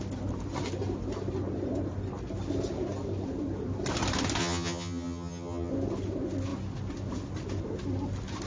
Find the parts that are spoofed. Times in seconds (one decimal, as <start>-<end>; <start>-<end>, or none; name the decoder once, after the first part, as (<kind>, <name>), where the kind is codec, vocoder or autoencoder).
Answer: 4.4-5.7 (vocoder, HiFi-GAN)